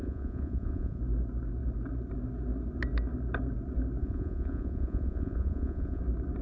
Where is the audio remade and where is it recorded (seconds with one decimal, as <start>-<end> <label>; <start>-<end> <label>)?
0.0-1.0 remade; 1.0-4.0 recorded; 4.0-6.0 remade; 6.0-6.4 recorded